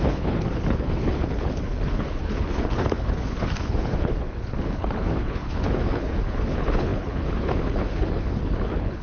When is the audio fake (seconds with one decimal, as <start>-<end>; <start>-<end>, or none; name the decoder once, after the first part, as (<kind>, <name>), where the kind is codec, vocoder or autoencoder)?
0.0-9.0 (codec, HILCodec)